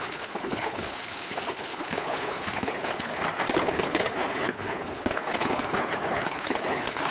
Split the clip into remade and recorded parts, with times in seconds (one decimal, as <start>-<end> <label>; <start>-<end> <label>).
0.0-3.1 remade; 3.1-3.6 recorded; 3.6-7.1 remade